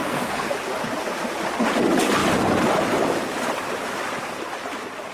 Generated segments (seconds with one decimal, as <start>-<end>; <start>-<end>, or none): 0.0-0.5